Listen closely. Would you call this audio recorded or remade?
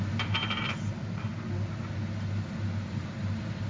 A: recorded